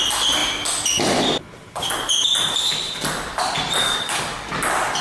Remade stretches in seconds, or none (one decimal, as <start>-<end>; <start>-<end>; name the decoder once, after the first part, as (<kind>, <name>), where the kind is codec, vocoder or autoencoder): 3.8-4.5 (codec, DAC)